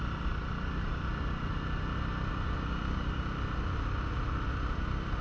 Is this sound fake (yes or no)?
no